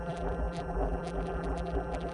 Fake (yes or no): yes